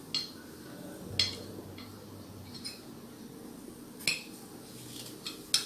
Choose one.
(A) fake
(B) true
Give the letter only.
B